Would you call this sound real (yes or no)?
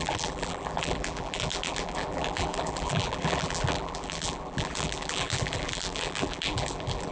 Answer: no